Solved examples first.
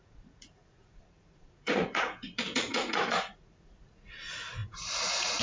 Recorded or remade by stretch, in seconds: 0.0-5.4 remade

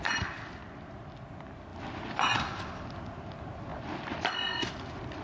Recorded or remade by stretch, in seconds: 0.0-5.2 recorded

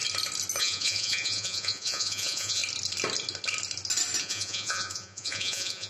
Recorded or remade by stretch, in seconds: 0.0-0.6 recorded; 0.6-2.6 remade; 2.6-4.2 recorded; 4.2-5.9 remade

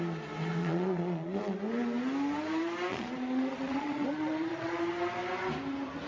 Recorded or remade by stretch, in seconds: 0.0-0.6 recorded; 0.6-1.4 remade; 1.4-2.9 recorded; 2.9-4.8 remade; 4.8-6.1 recorded

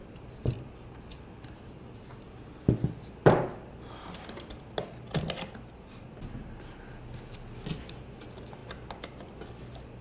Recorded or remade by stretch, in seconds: 0.0-10.0 recorded

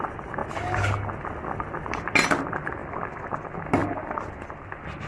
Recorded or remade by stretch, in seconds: 0.0-5.1 recorded

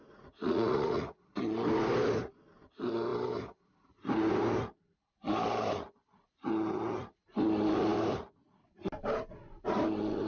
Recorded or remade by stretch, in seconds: 0.0-1.4 remade; 1.4-10.3 recorded